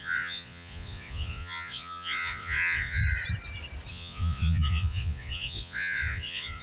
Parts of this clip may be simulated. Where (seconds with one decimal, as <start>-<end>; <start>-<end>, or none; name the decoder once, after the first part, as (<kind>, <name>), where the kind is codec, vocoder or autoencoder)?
0.0-3.0 (vocoder, Vocos); 3.9-6.6